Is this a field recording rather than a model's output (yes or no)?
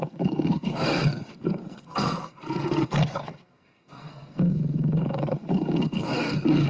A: no